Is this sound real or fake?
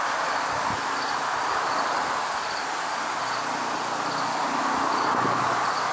real